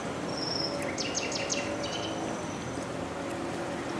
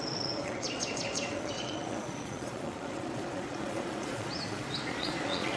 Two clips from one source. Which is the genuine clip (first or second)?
first